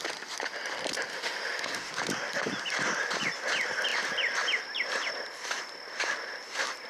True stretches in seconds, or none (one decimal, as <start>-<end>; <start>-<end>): 0.0-1.1; 1.9-6.9